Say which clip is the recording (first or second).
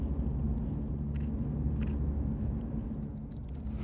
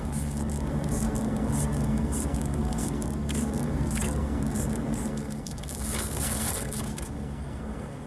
first